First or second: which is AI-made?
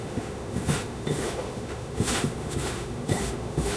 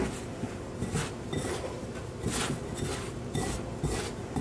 first